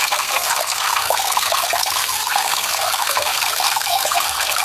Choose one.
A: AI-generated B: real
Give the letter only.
A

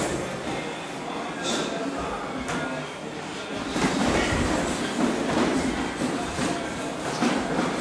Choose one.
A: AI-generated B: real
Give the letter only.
B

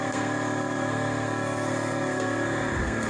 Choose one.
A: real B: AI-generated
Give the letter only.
B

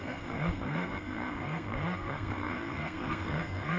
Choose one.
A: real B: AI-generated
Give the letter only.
B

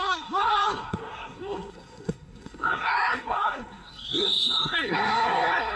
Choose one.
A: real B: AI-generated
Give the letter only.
B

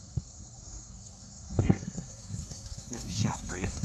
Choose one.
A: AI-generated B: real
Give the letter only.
A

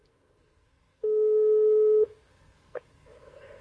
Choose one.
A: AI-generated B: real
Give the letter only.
A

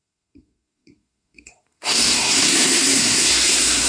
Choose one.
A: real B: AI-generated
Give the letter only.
B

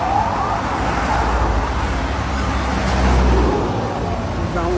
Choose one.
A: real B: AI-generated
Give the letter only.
A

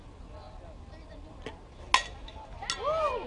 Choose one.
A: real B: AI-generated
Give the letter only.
A